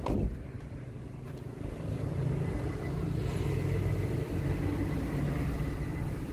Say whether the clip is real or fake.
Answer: fake